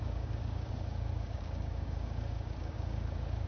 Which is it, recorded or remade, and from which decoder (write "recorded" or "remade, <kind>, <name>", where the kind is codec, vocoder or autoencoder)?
remade, codec, DAC